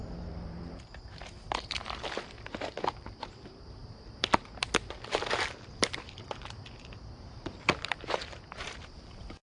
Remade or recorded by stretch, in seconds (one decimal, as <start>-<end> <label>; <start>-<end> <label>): 0.0-9.6 remade